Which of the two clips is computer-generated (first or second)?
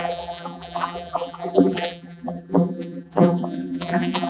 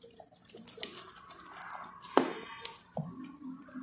first